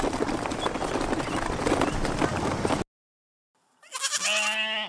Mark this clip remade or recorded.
recorded